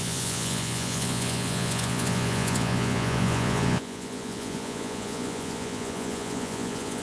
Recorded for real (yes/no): no